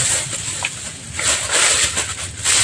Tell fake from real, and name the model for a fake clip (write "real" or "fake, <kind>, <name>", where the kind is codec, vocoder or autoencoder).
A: real